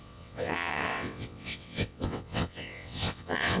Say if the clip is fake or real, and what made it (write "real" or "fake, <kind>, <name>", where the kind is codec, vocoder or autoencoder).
fake, vocoder, WaveNeXt